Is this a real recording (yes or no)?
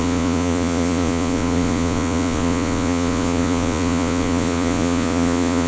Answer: no